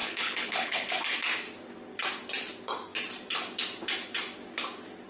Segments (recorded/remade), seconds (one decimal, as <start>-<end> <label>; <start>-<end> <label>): 0.0-0.9 remade; 0.9-5.1 recorded